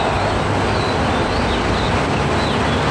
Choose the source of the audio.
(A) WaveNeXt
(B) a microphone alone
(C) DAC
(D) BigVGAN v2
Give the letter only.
B